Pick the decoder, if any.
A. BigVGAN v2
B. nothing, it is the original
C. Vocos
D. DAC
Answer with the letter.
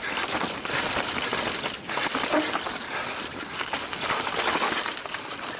B